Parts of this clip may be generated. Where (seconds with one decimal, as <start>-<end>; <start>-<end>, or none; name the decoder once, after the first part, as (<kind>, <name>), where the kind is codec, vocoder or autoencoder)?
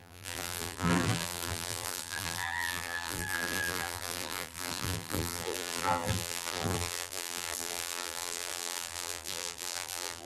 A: 0.0-10.2 (vocoder, BigVGAN v2)